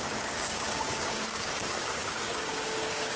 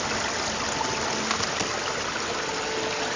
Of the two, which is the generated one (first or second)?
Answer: first